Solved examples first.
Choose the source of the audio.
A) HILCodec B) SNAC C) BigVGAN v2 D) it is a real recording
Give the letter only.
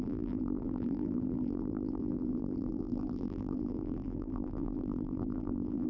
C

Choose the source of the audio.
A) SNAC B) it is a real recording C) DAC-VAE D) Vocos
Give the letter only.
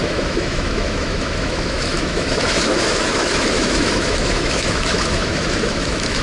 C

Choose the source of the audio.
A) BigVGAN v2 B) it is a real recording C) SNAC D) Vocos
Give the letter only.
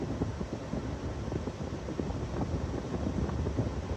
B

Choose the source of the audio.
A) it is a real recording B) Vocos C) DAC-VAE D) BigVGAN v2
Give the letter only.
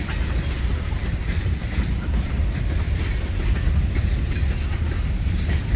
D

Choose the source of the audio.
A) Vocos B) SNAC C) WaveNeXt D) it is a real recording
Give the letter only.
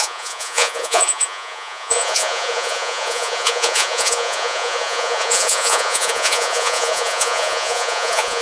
A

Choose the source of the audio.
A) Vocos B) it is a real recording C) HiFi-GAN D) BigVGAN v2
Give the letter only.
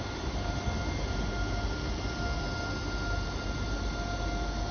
B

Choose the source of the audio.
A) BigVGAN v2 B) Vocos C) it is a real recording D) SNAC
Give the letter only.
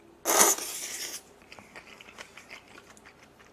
C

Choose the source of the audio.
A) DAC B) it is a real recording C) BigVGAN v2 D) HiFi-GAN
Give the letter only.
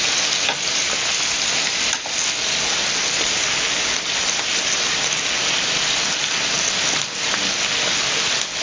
B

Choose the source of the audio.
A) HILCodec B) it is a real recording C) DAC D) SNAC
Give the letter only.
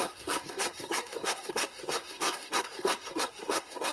D